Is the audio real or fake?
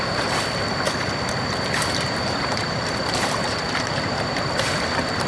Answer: real